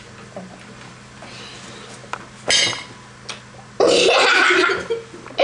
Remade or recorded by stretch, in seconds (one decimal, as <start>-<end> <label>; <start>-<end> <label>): 0.0-5.4 recorded